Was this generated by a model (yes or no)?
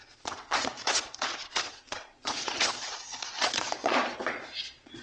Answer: yes